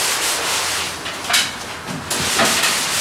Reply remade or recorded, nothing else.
recorded